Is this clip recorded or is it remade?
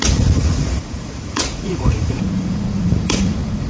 remade